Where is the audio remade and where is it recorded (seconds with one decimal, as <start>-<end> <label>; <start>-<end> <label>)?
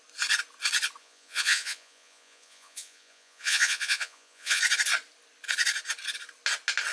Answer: 0.0-1.0 recorded; 1.0-4.6 remade; 4.6-6.9 recorded